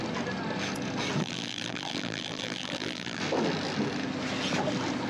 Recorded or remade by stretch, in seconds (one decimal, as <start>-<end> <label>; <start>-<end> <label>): 0.0-1.2 recorded; 1.2-3.2 remade; 3.2-5.1 recorded